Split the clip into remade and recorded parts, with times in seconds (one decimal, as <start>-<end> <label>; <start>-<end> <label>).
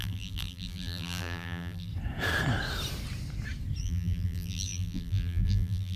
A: 0.0-1.9 remade; 1.9-3.8 recorded; 3.8-6.0 remade